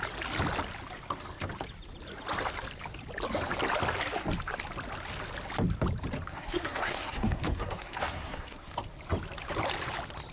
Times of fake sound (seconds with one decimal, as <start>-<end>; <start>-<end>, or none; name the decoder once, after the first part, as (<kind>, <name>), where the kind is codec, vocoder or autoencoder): 6.3-8.7 (codec, SNAC)